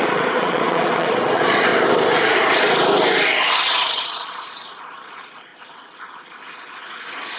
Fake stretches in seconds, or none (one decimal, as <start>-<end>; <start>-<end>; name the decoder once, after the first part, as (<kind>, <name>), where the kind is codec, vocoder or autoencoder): 0.0-1.7 (vocoder, Vocos); 3.7-5.5